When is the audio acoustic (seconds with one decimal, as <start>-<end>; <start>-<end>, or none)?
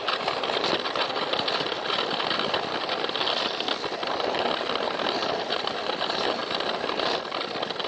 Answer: 0.0-7.9